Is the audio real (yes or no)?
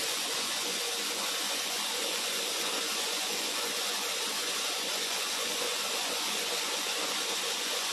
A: no